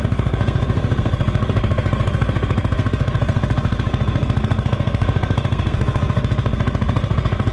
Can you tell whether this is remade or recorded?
remade